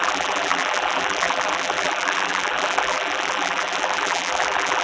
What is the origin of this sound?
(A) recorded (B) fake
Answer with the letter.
B